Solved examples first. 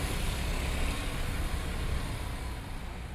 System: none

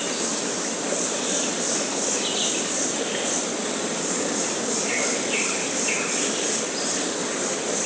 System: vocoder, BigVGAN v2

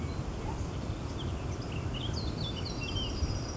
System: none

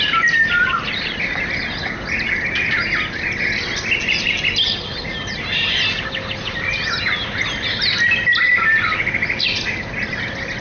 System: none